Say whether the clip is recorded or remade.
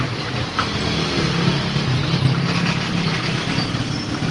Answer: recorded